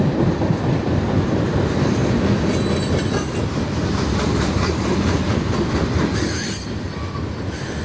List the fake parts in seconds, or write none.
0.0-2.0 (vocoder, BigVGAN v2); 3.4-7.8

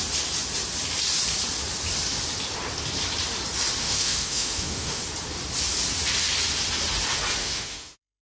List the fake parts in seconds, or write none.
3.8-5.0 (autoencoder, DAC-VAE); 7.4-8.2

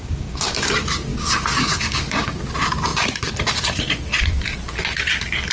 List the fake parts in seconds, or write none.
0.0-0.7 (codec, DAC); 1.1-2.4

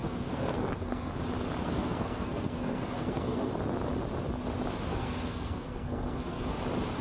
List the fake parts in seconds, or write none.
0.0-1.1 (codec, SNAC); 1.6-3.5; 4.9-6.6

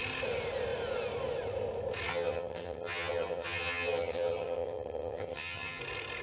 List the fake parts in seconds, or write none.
2.1-5.8 (vocoder, HiFi-GAN)